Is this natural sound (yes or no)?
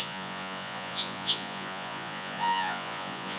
no